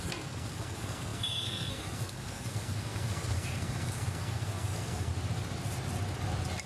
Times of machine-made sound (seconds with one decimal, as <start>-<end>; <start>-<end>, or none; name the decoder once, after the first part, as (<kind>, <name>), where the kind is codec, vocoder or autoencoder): 0.0-5.1 (codec, SNAC)